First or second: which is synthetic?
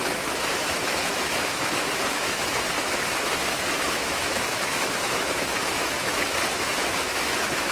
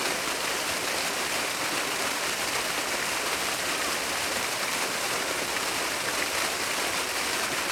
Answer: first